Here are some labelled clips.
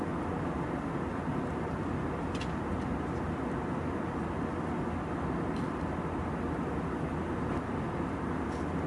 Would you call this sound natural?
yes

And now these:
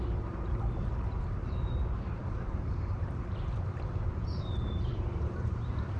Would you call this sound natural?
no